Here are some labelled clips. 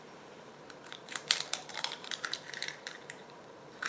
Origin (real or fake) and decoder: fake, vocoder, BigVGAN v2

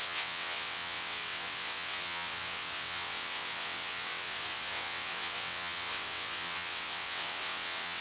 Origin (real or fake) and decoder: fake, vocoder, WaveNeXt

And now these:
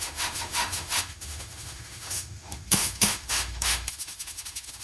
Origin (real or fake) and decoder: fake, autoencoder, DAC-VAE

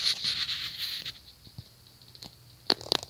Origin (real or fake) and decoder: real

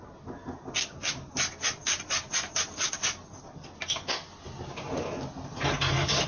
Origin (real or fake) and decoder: real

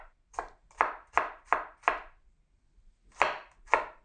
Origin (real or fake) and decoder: real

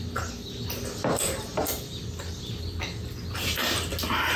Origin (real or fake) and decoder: real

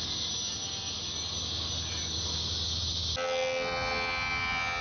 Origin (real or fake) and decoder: real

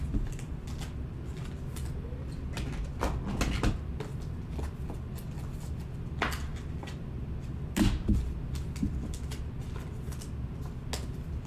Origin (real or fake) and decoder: real